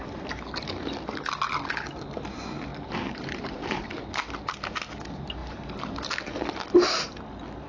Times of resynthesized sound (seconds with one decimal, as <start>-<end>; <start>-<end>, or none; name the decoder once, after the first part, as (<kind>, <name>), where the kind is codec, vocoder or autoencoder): 2.7-4.0 (vocoder, BigVGAN v2); 5.4-6.4